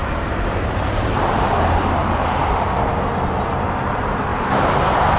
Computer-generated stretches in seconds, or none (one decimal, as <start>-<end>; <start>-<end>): 0.0-2.4; 4.3-5.2